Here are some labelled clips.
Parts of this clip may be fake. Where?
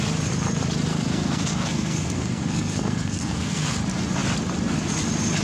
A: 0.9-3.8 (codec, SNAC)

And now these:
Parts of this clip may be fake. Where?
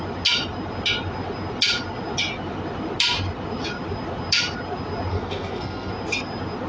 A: 5.1-5.9 (codec, SNAC)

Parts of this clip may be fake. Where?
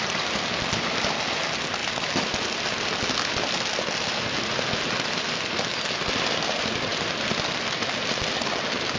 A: none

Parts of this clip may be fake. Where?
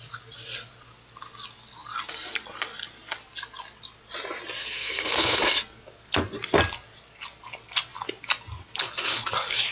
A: 4.6-5.4 (codec, SNAC)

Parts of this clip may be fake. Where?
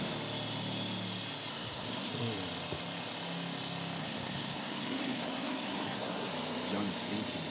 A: 1.5-2.1 (codec, SNAC); 4.0-6.3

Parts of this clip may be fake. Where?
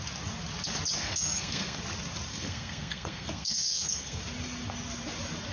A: 1.0-1.8 (codec, SNAC); 2.3-4.2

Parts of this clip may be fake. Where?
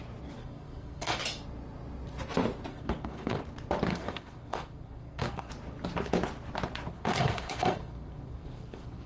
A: 0.4-1.2 (codec, SNAC); 2.7-3.4; 3.9-5.5; 6.9-9.1